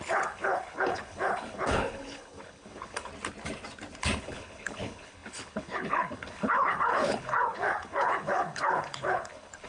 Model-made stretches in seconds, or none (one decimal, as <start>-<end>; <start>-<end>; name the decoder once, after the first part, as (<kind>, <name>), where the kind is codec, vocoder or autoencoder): 0.0-3.1 (codec, HILCodec); 4.2-9.7